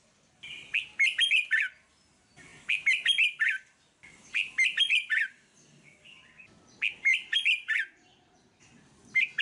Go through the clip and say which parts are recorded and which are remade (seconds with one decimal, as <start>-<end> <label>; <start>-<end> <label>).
0.0-9.4 recorded